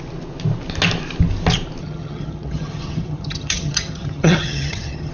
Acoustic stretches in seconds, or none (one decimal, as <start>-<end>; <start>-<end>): 0.0-1.8